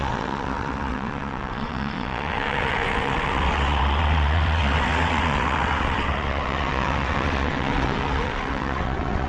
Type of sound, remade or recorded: remade